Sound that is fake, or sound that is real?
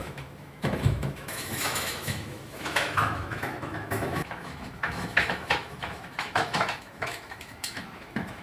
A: fake